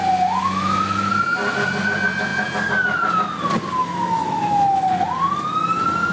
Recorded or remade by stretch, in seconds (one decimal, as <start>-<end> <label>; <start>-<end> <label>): 0.0-0.4 recorded; 0.4-1.1 remade; 1.1-3.8 recorded; 3.8-4.8 remade; 4.8-6.1 recorded